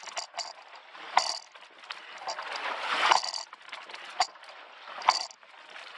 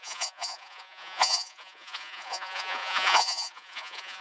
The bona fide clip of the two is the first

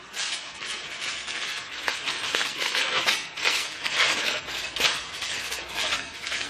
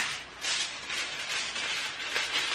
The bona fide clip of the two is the second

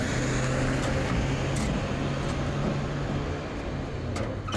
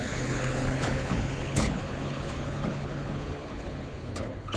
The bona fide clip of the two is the first